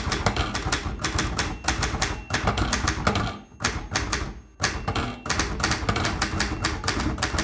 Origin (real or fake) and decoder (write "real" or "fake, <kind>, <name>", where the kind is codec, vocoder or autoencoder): real